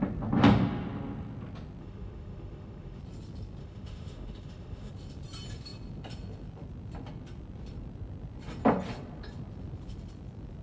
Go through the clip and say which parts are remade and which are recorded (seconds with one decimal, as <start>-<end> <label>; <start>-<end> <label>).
0.0-1.8 recorded; 1.8-3.0 remade; 3.0-3.6 recorded; 3.6-4.9 remade; 4.9-10.6 recorded